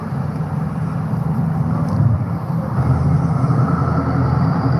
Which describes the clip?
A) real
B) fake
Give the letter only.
B